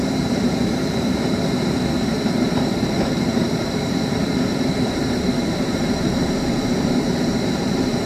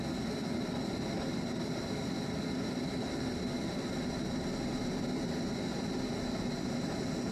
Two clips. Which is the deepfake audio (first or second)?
first